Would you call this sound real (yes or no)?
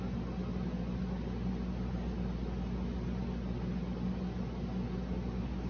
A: yes